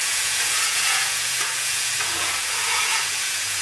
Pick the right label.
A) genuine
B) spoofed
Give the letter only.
B